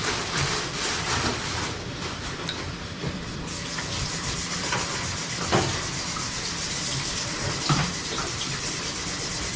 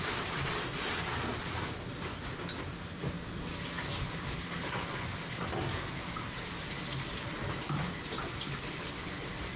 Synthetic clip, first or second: first